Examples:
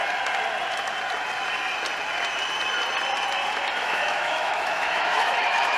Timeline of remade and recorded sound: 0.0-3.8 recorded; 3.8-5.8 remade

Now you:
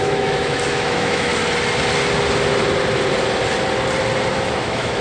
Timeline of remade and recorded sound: 0.0-1.3 remade; 1.3-4.3 recorded; 4.3-5.0 remade

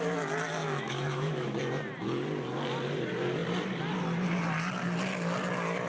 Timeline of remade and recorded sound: 0.0-0.6 recorded; 0.6-1.6 remade; 1.6-5.9 recorded

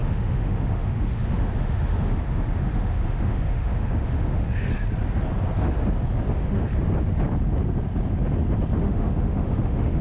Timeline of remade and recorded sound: 0.0-4.7 remade; 4.7-6.3 recorded; 6.3-6.7 remade; 6.7-8.8 recorded; 8.8-10.0 remade

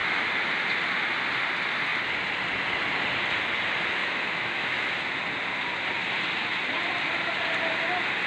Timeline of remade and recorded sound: 0.0-4.0 recorded; 4.0-4.9 remade; 4.9-8.3 recorded

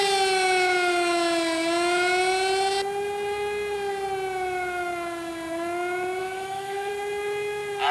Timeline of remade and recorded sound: 0.0-6.2 recorded; 6.2-6.9 remade; 6.9-7.9 recorded